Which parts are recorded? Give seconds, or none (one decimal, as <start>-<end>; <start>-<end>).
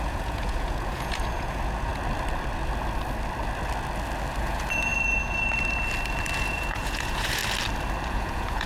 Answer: 1.9-4.4; 4.9-6.4; 7.4-8.1